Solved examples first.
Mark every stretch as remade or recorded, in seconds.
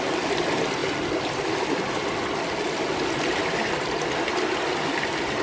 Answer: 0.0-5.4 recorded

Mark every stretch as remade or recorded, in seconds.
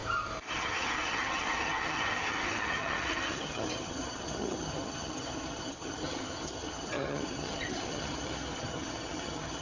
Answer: 0.0-0.5 recorded; 0.5-9.6 remade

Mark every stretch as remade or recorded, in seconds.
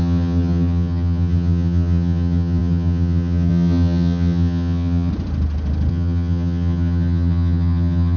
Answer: 0.0-5.1 remade; 5.1-5.9 recorded; 5.9-8.2 remade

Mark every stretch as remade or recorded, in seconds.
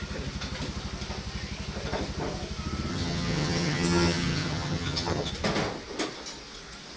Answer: 0.0-2.9 recorded; 2.9-5.3 remade; 5.3-7.0 recorded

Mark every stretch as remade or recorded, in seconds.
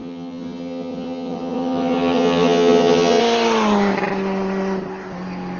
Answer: 0.0-3.2 remade; 3.2-5.6 recorded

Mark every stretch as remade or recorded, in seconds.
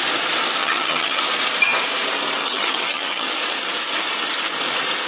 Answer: 0.0-0.6 recorded; 0.6-1.2 remade; 1.2-2.4 recorded; 2.4-3.3 remade; 3.3-5.1 recorded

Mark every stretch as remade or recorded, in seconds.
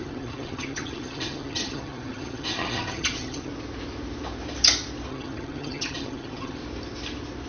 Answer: 0.0-3.5 remade; 3.5-5.1 recorded; 5.1-6.6 remade; 6.6-7.5 recorded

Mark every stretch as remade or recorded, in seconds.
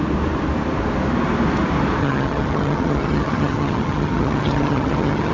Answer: 0.0-2.0 recorded; 2.0-5.3 remade